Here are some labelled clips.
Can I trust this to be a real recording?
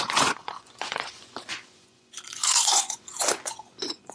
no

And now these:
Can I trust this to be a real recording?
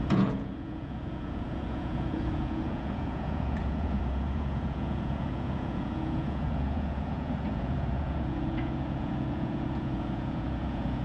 no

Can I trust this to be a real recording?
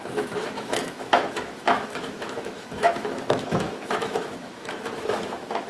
no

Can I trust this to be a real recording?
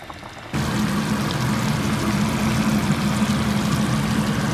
yes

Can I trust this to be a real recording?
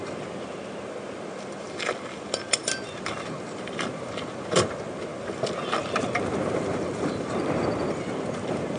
no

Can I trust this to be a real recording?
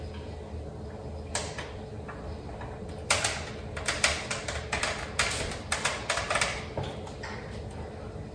yes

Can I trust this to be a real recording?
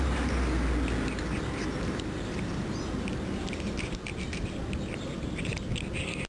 yes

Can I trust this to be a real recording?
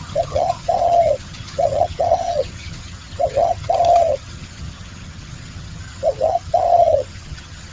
no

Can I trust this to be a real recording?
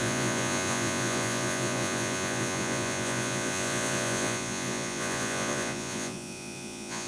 no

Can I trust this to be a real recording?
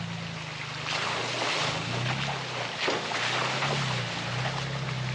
yes